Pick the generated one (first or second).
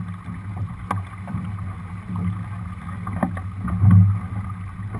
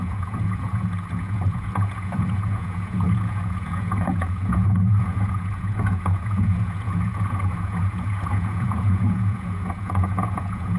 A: second